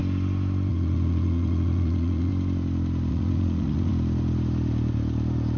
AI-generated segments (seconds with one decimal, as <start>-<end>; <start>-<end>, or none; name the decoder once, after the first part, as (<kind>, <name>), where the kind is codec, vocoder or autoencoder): 0.7-2.3 (vocoder, Vocos); 3.1-3.9

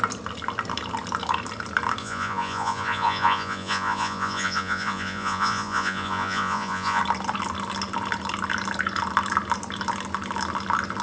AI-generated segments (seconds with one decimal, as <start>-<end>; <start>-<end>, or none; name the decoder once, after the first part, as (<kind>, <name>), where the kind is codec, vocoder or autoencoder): 2.0-7.0 (vocoder, Vocos)

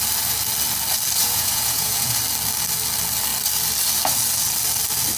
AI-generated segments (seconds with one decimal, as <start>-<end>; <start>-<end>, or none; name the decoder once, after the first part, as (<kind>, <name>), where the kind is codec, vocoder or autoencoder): 1.2-2.2 (vocoder, Vocos)

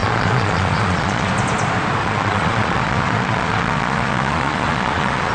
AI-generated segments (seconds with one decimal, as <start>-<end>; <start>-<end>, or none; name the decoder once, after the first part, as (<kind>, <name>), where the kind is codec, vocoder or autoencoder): 0.0-1.3 (vocoder, Vocos); 2.0-5.3